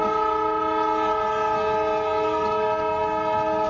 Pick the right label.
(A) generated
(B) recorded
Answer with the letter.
B